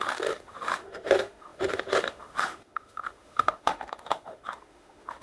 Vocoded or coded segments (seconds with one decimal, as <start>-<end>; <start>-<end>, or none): 0.0-5.2